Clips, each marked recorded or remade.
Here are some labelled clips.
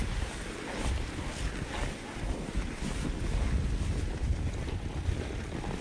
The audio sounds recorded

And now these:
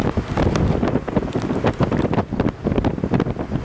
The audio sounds recorded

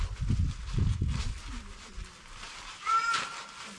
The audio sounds recorded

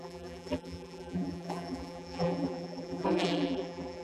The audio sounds remade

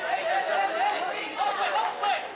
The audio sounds recorded